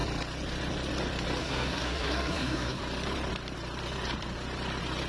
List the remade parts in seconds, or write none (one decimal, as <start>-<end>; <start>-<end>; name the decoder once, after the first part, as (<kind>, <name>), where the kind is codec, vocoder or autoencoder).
1.4-2.8 (codec, SNAC)